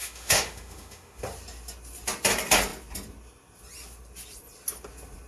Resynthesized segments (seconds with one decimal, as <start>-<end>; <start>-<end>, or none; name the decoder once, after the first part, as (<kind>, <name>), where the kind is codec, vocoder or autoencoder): 0.0-1.2 (autoencoder, DAC-VAE)